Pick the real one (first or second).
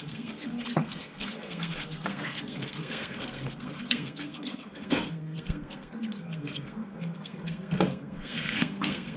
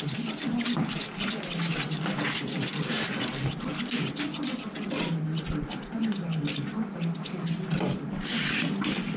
second